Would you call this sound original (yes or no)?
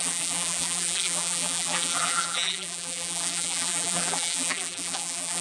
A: no